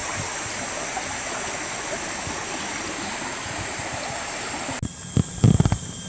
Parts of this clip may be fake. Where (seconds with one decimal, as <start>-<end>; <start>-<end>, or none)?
none